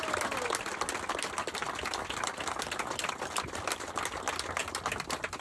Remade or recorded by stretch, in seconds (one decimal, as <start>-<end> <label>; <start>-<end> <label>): 0.0-5.4 recorded